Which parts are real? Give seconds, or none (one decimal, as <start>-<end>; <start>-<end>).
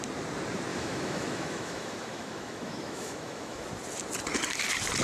0.0-0.7; 3.7-5.0